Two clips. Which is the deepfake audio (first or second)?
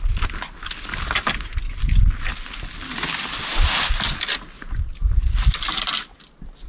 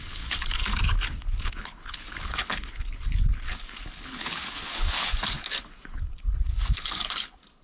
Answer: second